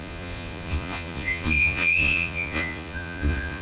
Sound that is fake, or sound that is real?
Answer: fake